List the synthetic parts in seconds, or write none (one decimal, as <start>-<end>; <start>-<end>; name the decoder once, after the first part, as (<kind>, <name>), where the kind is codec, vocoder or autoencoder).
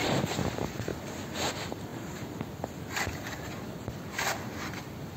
none